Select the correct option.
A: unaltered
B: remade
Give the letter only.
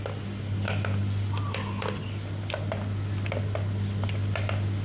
A